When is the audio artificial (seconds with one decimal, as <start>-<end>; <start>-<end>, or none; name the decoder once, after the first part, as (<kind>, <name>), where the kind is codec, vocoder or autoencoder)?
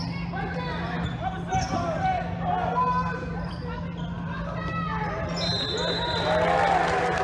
none